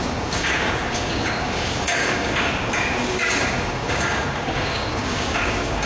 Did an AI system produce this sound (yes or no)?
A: yes